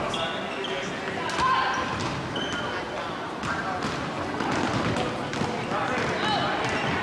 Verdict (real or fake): real